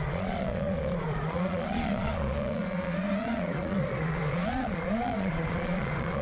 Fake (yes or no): yes